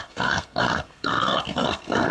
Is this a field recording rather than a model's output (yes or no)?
no